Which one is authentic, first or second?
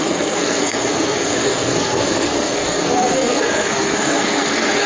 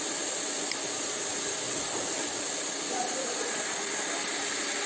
second